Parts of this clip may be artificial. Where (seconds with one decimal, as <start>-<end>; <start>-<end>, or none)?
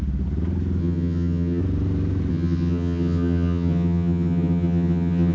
0.8-1.6; 2.3-5.3